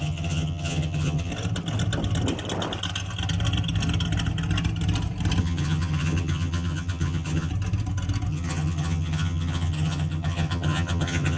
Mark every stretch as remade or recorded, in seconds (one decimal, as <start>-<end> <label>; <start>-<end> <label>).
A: 0.0-1.3 remade; 1.3-5.4 recorded; 5.4-7.5 remade; 7.5-8.3 recorded; 8.3-11.4 remade